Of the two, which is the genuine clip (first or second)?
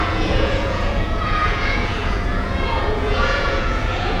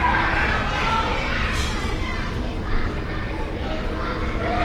second